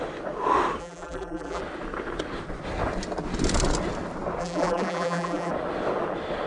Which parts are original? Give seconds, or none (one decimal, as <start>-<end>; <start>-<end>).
0.0-0.8; 1.6-4.4; 5.5-6.5